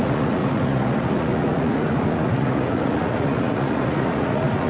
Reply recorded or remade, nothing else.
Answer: remade